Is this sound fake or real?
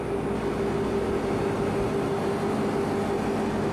real